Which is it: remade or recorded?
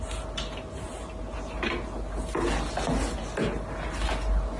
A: recorded